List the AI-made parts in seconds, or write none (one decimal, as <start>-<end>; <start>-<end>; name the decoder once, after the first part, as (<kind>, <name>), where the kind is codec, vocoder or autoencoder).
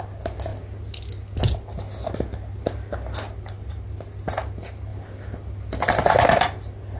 none